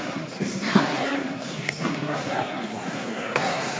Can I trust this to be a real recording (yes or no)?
no